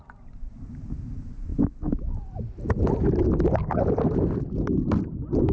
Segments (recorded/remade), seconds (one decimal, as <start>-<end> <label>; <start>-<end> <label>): 0.0-5.5 recorded